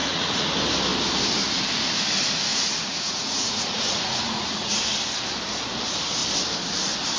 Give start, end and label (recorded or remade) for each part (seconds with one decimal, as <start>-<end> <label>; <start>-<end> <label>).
0.0-0.5 remade; 0.5-2.5 recorded; 2.5-4.8 remade; 4.8-7.2 recorded